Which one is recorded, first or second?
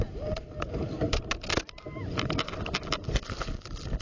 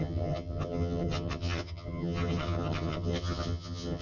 first